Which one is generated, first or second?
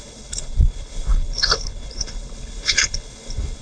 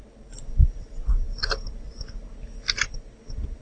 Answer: first